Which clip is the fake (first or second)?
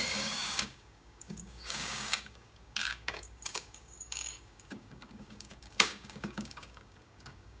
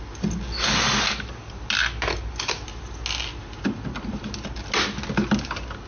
first